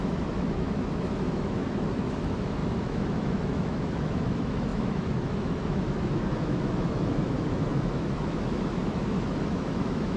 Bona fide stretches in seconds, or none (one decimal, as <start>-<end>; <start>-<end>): none